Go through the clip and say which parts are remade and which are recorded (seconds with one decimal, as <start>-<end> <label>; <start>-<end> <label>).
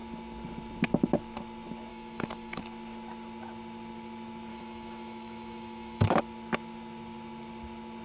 0.0-1.9 recorded; 1.9-2.6 remade; 2.6-4.5 recorded; 4.5-6.2 remade; 6.2-8.0 recorded